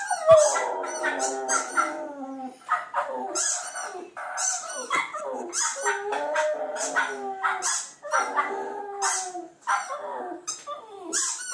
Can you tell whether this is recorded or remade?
recorded